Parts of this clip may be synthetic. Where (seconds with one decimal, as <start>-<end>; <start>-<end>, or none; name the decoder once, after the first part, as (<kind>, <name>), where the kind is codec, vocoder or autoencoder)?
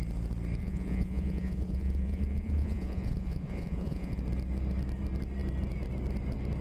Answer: 0.6-4.2 (vocoder, Vocos)